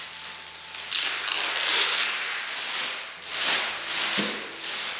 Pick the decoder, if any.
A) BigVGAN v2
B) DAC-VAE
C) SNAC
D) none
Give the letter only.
A